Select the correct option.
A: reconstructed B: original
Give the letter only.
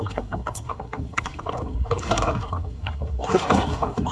A